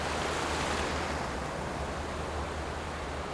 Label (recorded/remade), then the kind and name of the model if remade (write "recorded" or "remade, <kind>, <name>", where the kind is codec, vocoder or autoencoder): recorded